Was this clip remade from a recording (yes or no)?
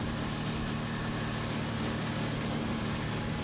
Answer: no